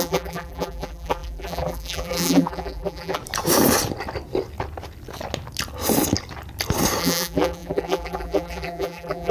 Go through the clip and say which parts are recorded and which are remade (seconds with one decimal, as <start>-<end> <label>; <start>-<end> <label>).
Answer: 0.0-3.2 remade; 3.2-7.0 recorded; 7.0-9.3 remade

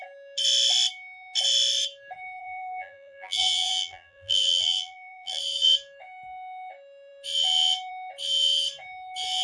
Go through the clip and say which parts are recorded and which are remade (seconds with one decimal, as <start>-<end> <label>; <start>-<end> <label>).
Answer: 0.0-2.4 recorded; 2.4-5.4 remade; 5.4-9.4 recorded

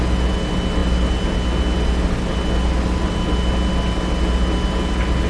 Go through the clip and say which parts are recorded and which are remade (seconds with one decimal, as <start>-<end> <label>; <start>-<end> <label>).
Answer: 0.0-5.3 recorded